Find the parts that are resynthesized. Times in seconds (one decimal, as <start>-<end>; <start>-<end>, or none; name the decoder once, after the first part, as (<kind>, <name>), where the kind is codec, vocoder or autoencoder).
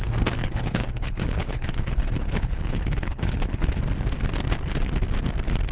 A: 0.4-3.8 (codec, HILCodec)